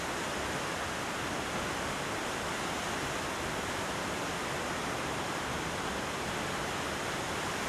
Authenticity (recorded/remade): recorded